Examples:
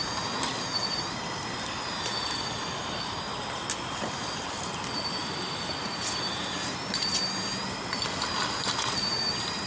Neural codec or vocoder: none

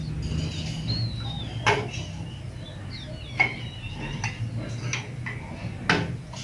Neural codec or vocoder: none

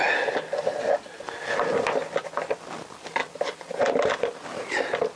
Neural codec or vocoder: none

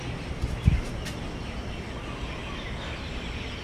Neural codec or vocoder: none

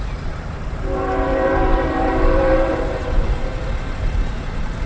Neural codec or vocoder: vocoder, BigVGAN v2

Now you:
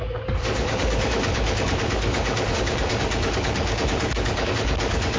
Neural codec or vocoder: codec, DAC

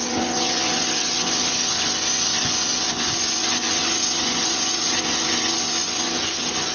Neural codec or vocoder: vocoder, Vocos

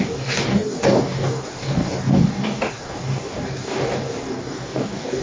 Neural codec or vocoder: codec, DAC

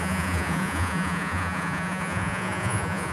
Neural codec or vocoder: vocoder, Vocos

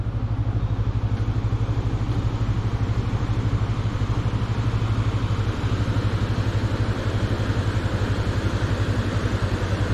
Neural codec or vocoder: none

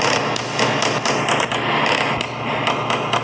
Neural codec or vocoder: none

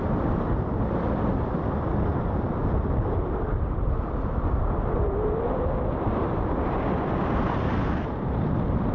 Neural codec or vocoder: none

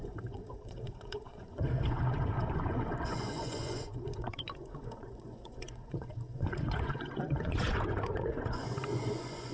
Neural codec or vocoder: vocoder, Vocos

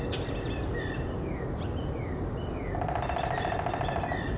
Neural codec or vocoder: none